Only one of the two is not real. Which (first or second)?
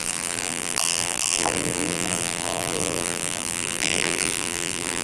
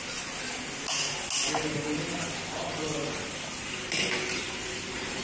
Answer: first